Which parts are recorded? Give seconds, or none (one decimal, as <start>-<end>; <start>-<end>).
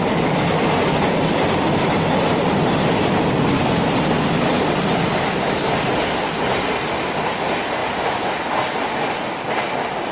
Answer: 0.0-10.1